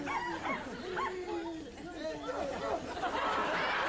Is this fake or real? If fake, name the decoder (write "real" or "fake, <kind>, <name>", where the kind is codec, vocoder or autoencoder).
real